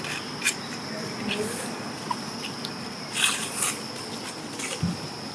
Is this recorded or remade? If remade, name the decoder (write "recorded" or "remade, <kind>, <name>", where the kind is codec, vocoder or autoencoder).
recorded